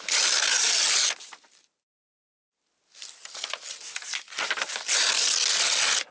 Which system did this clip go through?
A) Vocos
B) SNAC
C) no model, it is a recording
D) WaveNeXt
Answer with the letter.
C